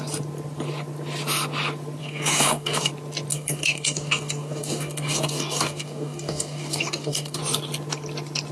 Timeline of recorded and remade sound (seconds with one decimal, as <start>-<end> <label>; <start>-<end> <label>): 0.0-2.0 recorded; 2.0-2.9 remade; 2.9-3.3 recorded; 3.3-7.4 remade; 7.4-8.5 recorded